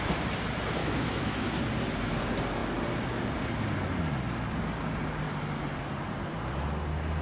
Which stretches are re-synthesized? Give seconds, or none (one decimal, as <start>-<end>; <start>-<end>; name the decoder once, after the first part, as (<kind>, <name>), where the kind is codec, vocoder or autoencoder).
0.8-1.5 (autoencoder, DAC-VAE)